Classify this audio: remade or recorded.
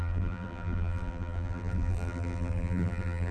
remade